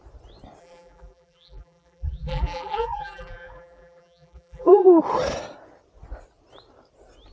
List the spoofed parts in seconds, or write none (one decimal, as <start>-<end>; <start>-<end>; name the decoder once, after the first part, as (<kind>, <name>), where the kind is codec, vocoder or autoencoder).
0.6-5.0 (vocoder, BigVGAN v2)